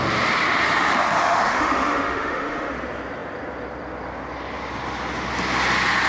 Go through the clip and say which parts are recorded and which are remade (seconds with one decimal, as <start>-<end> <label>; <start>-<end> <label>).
0.0-1.2 recorded; 1.2-2.7 remade; 2.7-6.1 recorded